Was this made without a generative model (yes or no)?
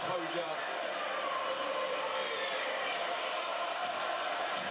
no